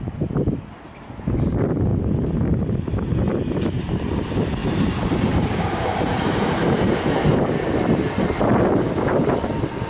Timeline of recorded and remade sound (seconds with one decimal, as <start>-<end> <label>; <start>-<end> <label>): 0.0-4.6 recorded; 4.6-7.4 remade; 7.4-9.9 recorded